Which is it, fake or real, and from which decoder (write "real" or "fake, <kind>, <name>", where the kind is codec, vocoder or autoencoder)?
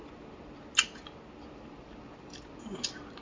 real